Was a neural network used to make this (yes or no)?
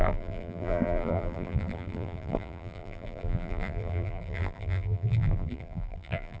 yes